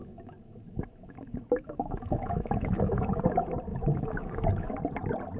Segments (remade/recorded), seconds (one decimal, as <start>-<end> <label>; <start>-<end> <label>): 0.0-3.2 remade; 3.2-3.7 recorded; 3.7-4.8 remade; 4.8-5.4 recorded